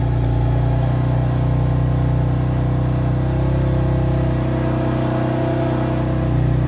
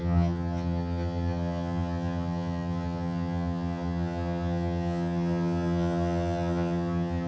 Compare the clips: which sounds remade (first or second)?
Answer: second